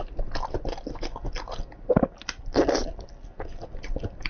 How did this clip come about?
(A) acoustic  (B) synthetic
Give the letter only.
A